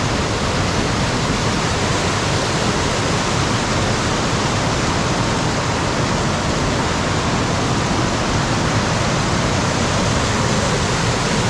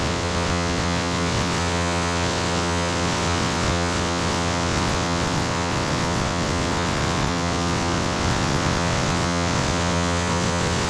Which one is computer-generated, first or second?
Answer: second